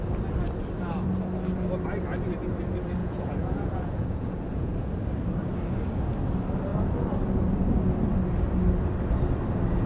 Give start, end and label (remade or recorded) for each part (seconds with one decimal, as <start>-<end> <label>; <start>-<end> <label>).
0.0-3.0 recorded; 3.0-4.9 remade; 4.9-9.9 recorded